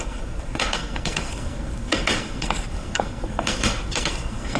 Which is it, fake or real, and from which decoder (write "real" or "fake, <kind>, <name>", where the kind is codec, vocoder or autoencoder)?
fake, codec, SNAC